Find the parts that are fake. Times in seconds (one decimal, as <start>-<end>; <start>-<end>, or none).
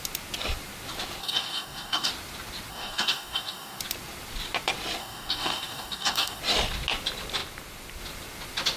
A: 1.2-2.1; 2.7-3.8; 5.0-6.4